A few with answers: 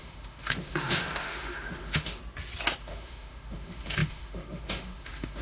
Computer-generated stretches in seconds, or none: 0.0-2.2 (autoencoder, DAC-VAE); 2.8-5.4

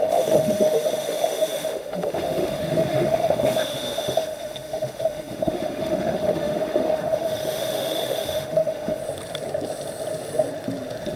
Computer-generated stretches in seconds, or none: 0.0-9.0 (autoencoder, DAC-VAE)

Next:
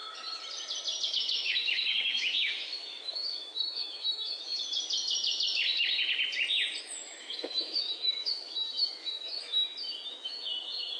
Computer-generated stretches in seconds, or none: 1.1-4.5 (autoencoder, DAC-VAE); 6.8-9.6; 10.1-11.0